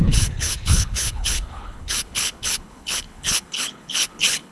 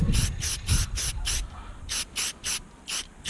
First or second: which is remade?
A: first